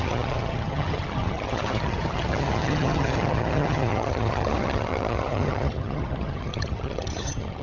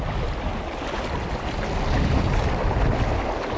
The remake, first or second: first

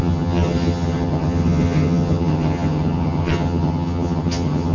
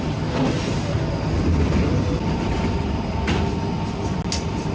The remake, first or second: first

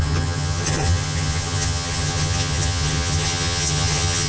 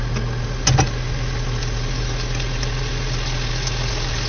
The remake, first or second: first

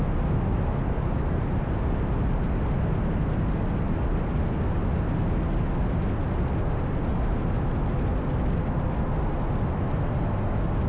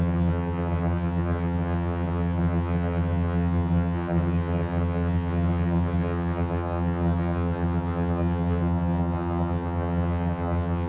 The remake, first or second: second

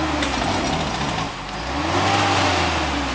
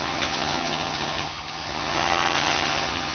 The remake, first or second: second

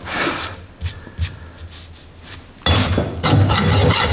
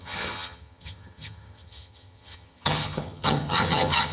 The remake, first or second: second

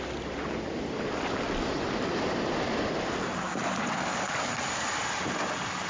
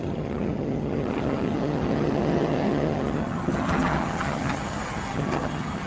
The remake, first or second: second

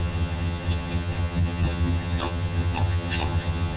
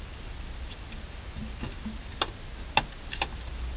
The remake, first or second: first